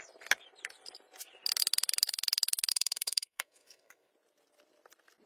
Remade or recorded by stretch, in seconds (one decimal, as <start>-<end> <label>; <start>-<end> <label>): 0.0-2.7 recorded; 2.7-4.1 remade; 4.1-5.3 recorded